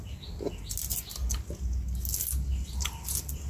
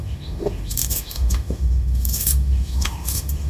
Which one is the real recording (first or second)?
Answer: first